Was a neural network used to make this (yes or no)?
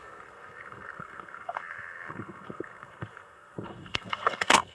yes